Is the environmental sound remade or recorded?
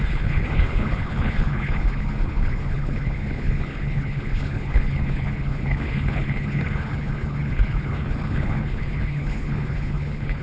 remade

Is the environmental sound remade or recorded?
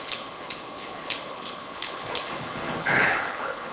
remade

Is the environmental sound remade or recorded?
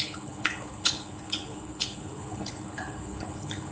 remade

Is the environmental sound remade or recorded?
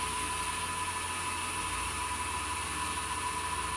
recorded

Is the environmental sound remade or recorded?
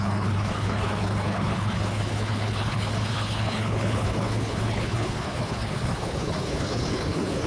remade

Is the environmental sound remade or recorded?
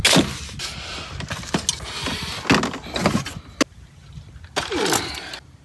recorded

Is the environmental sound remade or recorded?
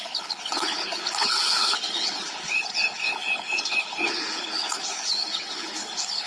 remade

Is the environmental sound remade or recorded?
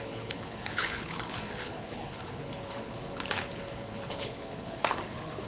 remade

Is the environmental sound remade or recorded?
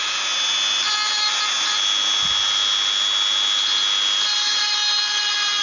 recorded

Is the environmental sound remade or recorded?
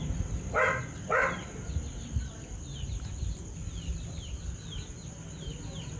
recorded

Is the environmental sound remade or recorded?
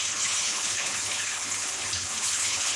remade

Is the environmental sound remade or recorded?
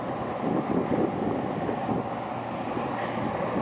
recorded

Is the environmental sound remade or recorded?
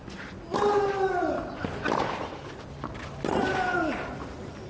recorded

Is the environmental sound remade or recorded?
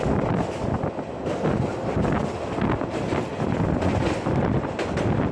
recorded